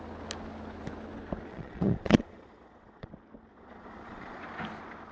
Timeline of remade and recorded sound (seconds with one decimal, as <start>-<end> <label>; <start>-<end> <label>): 0.0-1.5 recorded; 1.5-3.1 remade; 3.1-3.5 recorded; 3.5-4.4 remade; 4.4-5.1 recorded